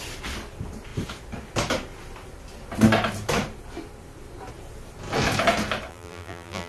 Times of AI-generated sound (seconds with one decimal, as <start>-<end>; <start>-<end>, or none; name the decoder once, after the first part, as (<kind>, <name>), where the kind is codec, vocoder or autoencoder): 5.9-6.7 (vocoder, BigVGAN v2)